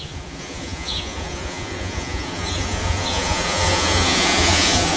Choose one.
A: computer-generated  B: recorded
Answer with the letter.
A